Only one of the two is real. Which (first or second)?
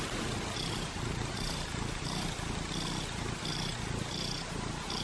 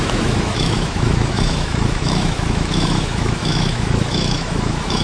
first